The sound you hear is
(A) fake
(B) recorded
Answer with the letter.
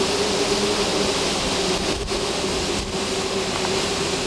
B